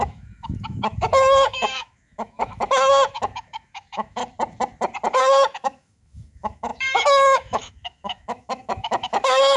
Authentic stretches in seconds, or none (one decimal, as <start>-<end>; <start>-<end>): 4.2-5.2